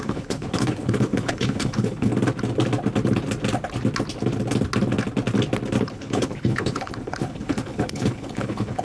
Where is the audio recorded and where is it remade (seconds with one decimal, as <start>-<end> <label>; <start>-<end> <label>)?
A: 0.0-2.1 remade; 2.1-5.8 recorded; 5.8-8.8 remade